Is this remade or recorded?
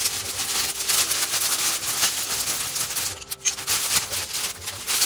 recorded